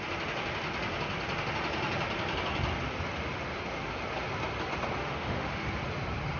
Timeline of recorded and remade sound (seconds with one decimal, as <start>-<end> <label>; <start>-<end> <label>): 0.0-5.0 recorded; 5.0-5.7 remade; 5.7-6.4 recorded